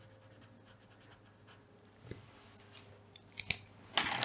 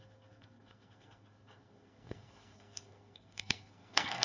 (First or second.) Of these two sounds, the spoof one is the second